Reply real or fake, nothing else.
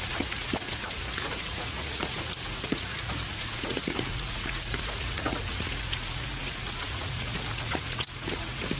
fake